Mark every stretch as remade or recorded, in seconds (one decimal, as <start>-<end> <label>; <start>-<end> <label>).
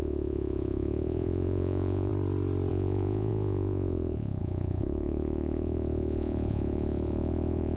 0.0-2.1 remade; 2.1-2.7 recorded; 2.7-7.8 remade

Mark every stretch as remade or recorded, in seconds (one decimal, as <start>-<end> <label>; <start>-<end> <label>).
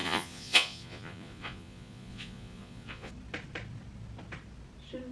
0.0-3.1 remade; 3.1-5.1 recorded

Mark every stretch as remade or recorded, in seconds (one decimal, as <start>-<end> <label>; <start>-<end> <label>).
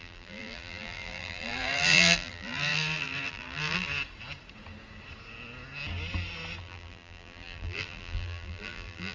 0.0-3.9 remade; 3.9-6.6 recorded; 6.6-9.1 remade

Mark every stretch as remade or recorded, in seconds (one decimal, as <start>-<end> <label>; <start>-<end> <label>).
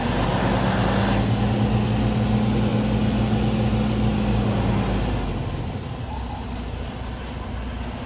0.0-8.1 recorded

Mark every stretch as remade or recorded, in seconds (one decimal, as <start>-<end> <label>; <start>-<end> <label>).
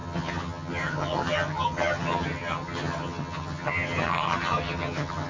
0.0-5.3 remade